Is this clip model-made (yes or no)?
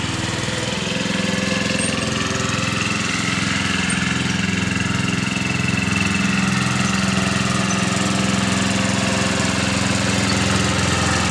no